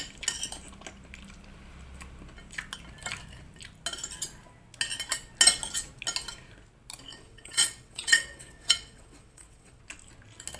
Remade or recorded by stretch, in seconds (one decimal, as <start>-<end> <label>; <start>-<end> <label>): 0.0-7.1 recorded; 7.1-9.8 remade; 9.8-10.6 recorded